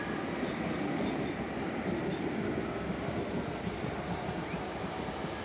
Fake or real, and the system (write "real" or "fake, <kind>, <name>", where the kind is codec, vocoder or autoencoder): real